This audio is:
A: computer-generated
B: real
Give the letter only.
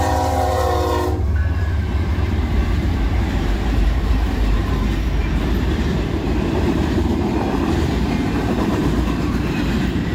A